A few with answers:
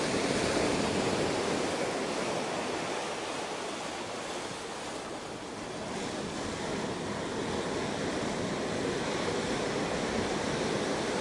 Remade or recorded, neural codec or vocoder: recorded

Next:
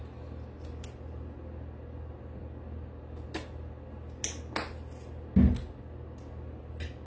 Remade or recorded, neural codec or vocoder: recorded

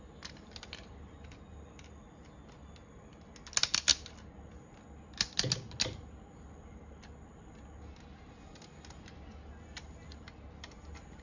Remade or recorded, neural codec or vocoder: recorded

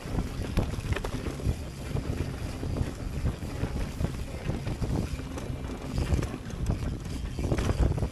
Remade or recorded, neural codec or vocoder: recorded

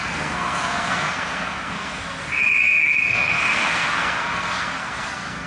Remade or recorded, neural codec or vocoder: remade, codec, SNAC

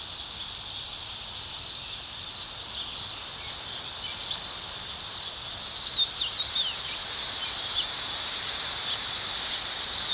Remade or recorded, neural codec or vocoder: recorded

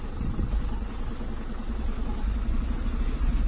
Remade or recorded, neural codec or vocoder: recorded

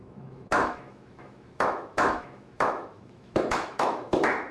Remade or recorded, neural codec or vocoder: remade, autoencoder, DAC-VAE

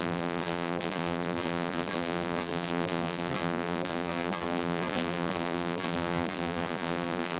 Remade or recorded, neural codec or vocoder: remade, vocoder, BigVGAN v2